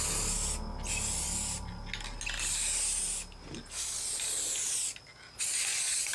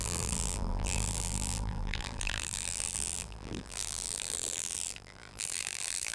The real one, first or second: first